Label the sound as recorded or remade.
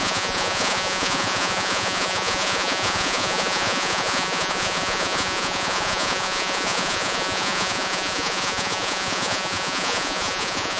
remade